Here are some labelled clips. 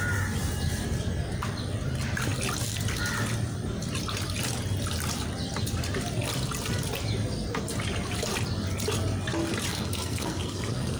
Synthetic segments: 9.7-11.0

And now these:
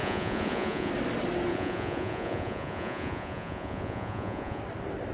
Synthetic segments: 0.0-0.9; 1.5-4.6

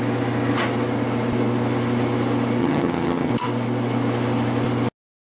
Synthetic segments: 2.6-3.3

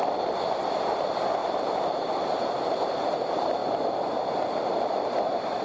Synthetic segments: 1.4-2.5

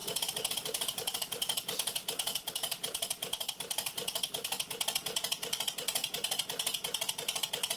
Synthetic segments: 0.0-7.8

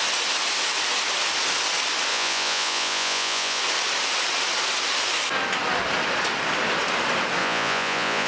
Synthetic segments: 2.1-3.6; 7.4-8.3

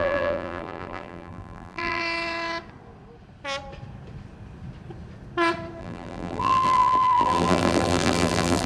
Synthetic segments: 0.0-2.0; 5.8-8.7

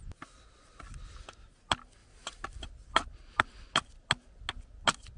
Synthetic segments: none